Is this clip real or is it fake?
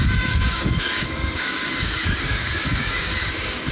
fake